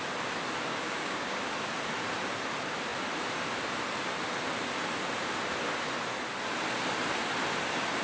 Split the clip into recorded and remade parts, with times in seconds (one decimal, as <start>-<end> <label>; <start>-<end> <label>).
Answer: 0.0-0.7 recorded; 0.7-1.4 remade; 1.4-8.0 recorded